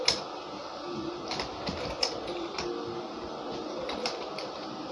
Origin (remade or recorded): recorded